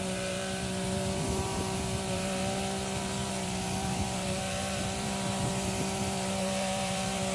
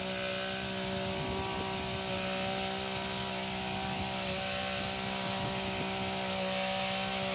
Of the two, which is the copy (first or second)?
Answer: first